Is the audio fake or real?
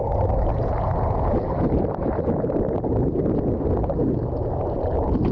real